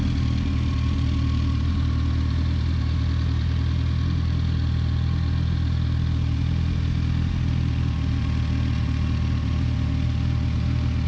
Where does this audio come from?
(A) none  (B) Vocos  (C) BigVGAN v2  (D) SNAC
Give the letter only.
A